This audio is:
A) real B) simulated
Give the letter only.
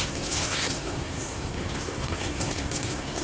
B